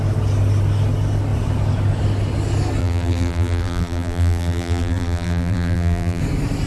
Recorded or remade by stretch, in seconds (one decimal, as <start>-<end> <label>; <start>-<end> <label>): 0.0-2.8 recorded; 2.8-6.2 remade; 6.2-6.7 recorded